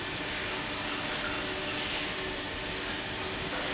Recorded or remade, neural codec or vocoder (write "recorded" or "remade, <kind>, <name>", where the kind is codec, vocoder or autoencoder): recorded